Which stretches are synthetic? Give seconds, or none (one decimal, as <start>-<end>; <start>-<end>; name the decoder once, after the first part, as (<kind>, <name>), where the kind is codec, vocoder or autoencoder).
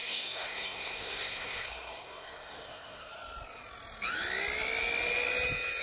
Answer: 0.0-3.1 (codec, SNAC)